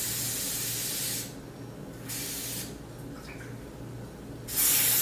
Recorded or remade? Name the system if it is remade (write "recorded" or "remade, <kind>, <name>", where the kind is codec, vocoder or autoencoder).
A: recorded